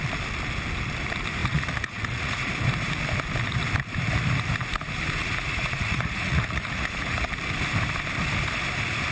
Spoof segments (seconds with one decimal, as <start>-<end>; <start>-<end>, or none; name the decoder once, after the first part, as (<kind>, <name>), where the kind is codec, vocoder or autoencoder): 1.4-2.5 (vocoder, Vocos); 5.2-7.3